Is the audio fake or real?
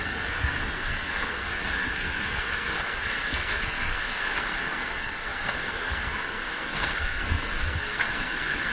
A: fake